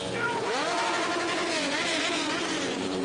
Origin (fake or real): fake